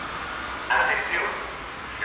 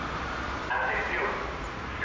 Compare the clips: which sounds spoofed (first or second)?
second